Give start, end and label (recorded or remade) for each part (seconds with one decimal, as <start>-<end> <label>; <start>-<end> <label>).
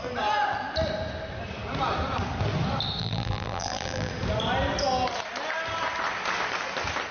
0.0-3.0 recorded; 3.0-4.1 remade; 4.1-7.1 recorded